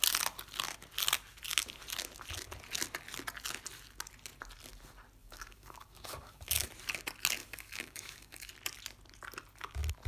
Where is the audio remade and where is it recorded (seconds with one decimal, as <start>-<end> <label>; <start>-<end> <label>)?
0.0-5.2 recorded; 5.2-6.7 remade; 6.7-7.4 recorded; 7.4-8.5 remade; 8.5-10.1 recorded